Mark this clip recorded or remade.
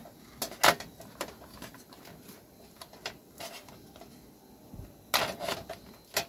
recorded